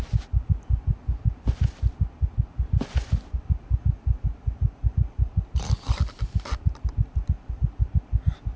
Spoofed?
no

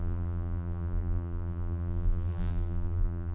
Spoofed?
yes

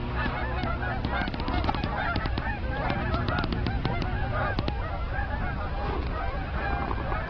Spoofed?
no